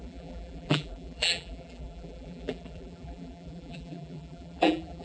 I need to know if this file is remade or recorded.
remade